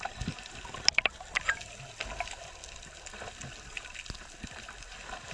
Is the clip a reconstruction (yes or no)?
no